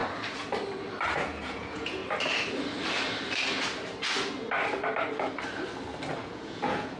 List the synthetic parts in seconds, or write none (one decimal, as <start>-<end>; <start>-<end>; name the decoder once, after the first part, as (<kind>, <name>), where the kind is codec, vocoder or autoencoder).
1.2-2.0 (vocoder, Vocos); 6.2-7.0